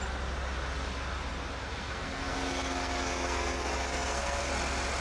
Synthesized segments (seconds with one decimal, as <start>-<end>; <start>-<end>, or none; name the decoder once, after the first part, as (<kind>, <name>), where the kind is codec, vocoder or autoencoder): 1.6-4.5 (codec, SNAC)